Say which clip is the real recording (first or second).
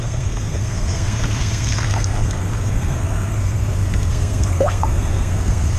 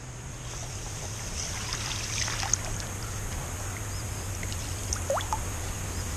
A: second